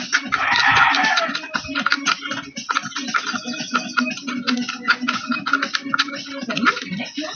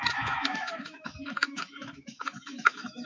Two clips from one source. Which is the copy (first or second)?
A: second